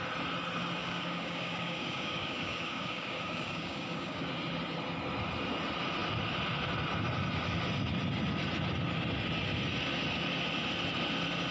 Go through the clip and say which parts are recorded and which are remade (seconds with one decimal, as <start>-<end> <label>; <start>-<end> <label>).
0.0-0.8 recorded; 0.8-4.3 remade; 4.3-11.5 recorded